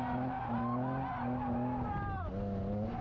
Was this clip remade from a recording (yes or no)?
no